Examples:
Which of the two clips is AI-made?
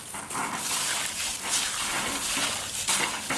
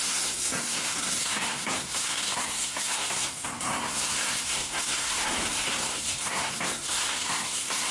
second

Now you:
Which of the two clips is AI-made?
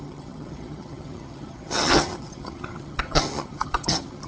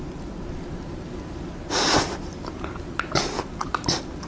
first